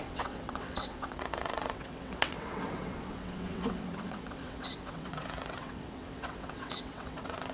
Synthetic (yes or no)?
yes